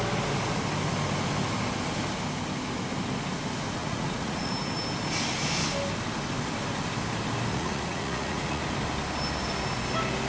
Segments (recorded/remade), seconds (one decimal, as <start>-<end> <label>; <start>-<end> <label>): 0.0-3.8 recorded; 3.8-4.5 remade; 4.5-7.5 recorded; 7.5-8.6 remade; 8.6-10.3 recorded